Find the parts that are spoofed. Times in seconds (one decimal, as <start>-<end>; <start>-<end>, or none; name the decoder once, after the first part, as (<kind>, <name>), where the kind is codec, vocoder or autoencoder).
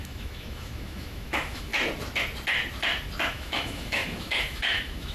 0.0-1.7 (autoencoder, DAC-VAE); 3.3-5.1